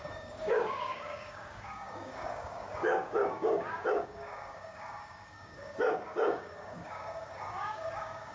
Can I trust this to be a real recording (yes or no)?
no